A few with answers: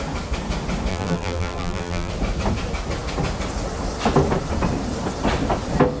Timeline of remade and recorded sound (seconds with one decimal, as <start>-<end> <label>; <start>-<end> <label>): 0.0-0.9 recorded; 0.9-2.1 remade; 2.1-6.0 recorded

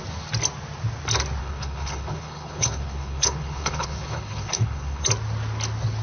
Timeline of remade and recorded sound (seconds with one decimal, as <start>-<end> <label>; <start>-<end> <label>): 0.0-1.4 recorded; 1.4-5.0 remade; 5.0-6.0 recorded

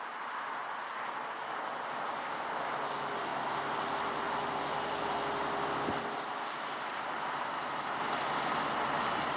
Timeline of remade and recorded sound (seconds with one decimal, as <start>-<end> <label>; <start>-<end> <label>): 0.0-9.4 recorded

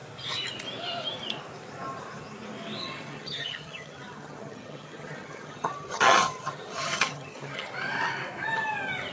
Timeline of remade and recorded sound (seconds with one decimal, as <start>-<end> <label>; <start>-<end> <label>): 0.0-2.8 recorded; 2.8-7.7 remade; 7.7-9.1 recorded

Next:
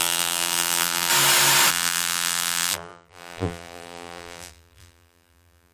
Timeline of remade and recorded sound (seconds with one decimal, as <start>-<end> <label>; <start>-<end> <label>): 0.0-1.1 remade; 1.1-1.7 recorded; 1.7-5.7 remade

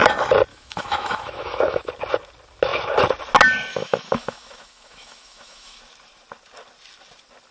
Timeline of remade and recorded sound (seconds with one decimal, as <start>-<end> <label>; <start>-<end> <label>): 0.0-0.5 recorded; 0.5-1.9 remade; 1.9-3.7 recorded; 3.7-5.8 remade; 5.8-7.5 recorded